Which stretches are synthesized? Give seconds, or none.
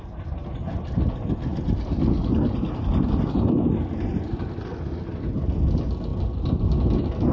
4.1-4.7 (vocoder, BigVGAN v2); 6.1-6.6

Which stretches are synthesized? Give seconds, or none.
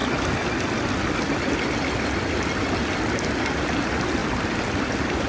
4.2-5.3 (vocoder, BigVGAN v2)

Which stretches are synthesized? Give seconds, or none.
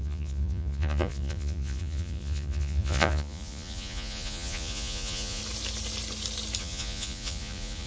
0.0-5.4 (vocoder, Vocos); 6.6-7.9